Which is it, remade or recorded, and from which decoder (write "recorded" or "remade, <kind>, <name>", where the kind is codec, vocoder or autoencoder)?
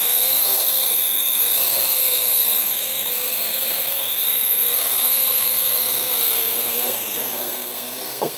remade, codec, SNAC